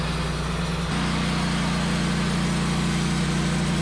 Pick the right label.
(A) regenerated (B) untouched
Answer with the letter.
B